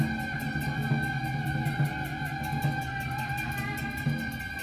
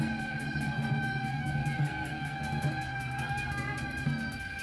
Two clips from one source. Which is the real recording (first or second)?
first